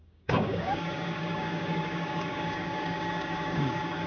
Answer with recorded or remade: remade